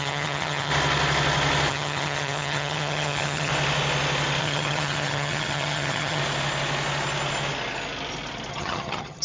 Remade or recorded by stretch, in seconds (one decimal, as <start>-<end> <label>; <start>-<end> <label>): 0.0-0.7 remade; 0.7-1.7 recorded; 1.7-3.5 remade; 3.5-4.4 recorded; 4.4-6.2 remade; 6.2-8.5 recorded; 8.5-9.2 remade